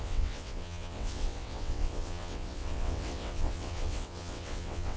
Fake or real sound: fake